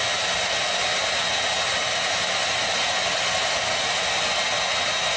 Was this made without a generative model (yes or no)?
yes